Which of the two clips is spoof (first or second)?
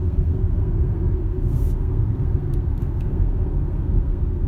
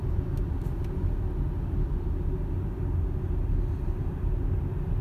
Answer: first